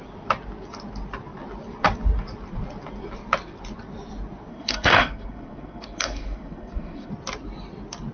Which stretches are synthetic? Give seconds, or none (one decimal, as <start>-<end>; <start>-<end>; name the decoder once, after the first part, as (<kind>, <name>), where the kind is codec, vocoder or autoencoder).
4.5-7.1 (codec, SNAC)

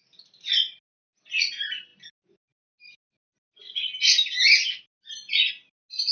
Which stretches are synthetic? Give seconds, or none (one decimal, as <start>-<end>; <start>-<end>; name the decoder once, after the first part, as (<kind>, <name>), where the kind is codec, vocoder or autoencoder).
none